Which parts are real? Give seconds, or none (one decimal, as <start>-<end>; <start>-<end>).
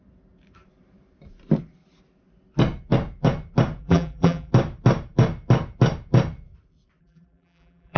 0.0-3.8; 4.5-7.0